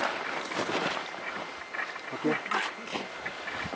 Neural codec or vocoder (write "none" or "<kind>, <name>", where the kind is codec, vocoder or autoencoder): none